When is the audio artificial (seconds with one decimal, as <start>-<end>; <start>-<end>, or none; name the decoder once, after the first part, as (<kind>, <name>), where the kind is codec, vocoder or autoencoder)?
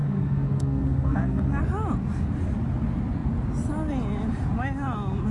0.0-1.6 (codec, SNAC)